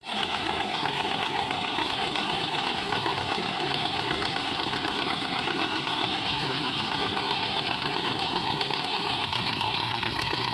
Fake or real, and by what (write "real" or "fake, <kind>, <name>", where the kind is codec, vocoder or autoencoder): fake, codec, SNAC